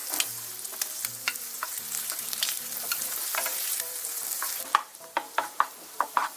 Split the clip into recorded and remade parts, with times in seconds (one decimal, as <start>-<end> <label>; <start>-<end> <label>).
0.0-1.1 recorded; 1.1-6.4 remade